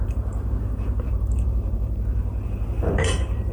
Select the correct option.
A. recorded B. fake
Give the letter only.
B